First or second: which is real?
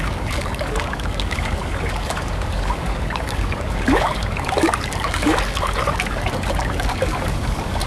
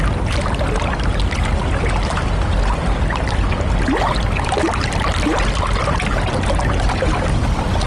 second